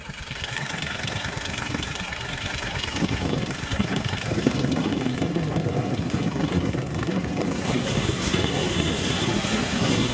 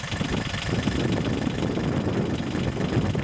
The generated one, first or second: first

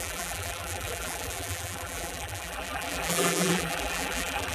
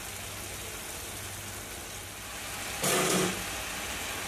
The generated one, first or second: first